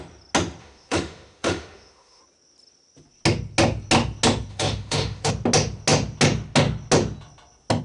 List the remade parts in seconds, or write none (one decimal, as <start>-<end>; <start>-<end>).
0.6-2.2; 4.5-5.3

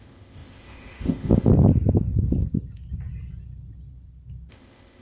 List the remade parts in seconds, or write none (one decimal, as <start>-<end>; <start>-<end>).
0.0-1.5; 4.5-5.0

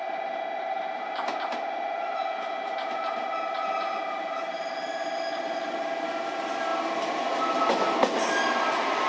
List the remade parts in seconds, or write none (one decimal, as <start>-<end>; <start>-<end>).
none

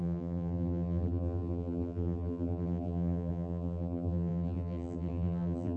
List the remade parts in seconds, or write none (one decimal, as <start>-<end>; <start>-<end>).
0.0-5.8